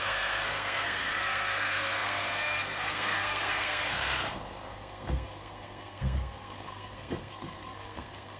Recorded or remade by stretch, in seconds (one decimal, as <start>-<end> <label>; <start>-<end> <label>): 0.0-8.4 remade